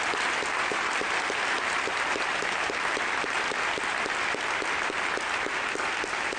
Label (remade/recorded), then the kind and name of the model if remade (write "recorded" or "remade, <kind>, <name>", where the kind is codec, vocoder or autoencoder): recorded